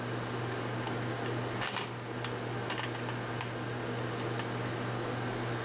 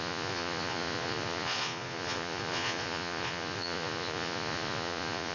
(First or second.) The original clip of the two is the first